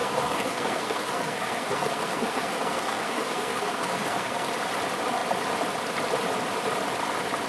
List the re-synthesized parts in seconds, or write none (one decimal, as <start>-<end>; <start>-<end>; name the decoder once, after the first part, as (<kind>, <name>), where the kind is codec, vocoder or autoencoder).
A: 0.0-4.5 (codec, SNAC)